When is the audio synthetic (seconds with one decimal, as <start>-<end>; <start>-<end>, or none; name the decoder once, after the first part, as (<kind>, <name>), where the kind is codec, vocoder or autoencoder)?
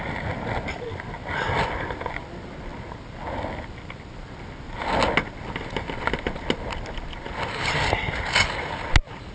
none